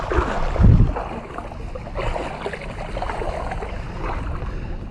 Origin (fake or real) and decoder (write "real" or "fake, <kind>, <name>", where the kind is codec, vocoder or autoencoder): real